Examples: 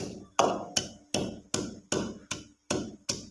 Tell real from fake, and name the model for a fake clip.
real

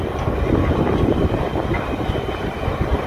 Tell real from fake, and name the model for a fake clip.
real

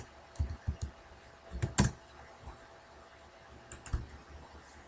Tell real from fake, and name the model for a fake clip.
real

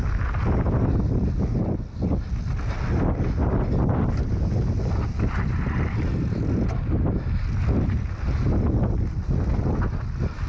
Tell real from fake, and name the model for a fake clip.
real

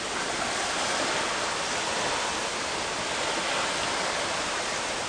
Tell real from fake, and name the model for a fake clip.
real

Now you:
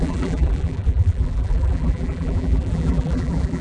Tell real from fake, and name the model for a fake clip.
fake, vocoder, BigVGAN v2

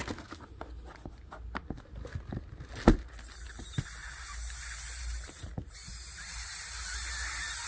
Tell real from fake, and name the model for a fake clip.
real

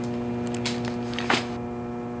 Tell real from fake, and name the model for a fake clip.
real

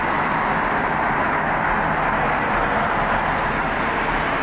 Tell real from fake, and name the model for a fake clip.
real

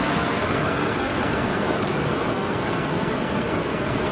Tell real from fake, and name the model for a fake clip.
fake, codec, SNAC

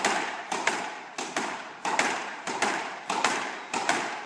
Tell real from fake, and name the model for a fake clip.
fake, vocoder, BigVGAN v2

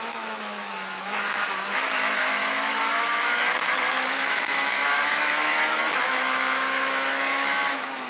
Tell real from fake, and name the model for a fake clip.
fake, autoencoder, DAC-VAE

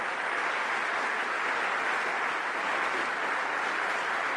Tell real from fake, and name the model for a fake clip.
real